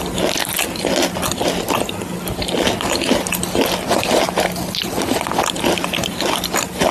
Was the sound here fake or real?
real